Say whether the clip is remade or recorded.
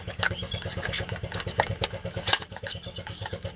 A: remade